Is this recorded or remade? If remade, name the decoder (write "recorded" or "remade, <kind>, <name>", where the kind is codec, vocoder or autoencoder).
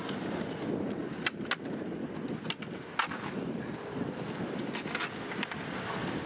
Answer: recorded